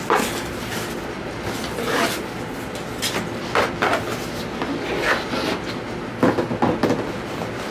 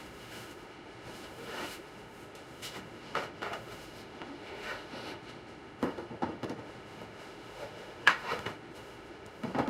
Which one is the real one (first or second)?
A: first